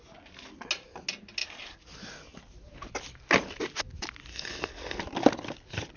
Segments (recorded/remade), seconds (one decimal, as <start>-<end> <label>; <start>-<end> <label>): 0.0-4.3 recorded; 4.3-5.0 remade; 5.0-6.0 recorded